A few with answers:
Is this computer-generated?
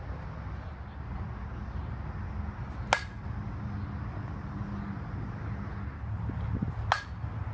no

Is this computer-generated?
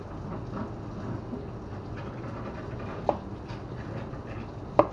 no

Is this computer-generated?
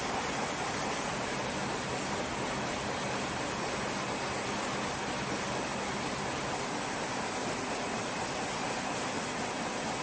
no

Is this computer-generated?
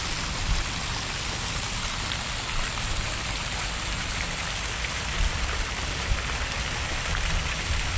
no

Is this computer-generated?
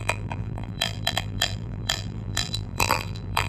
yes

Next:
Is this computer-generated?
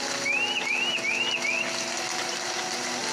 no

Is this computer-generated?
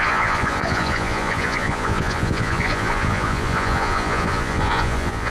yes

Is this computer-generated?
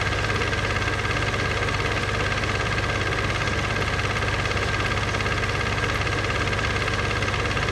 no